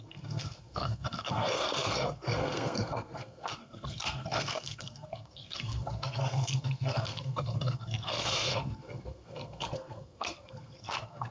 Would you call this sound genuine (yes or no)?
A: no